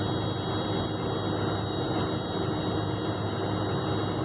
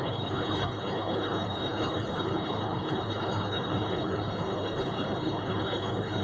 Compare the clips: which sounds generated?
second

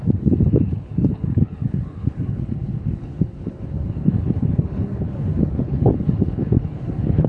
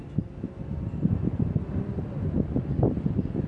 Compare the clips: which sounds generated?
first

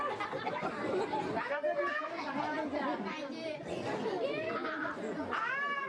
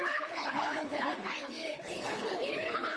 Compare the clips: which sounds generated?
second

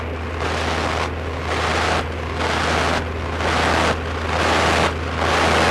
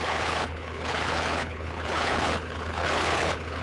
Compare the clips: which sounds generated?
second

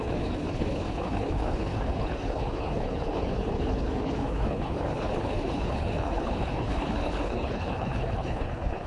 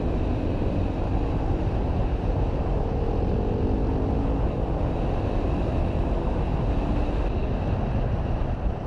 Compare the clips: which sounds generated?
first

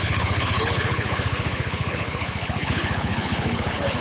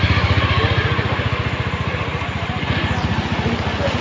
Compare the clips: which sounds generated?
first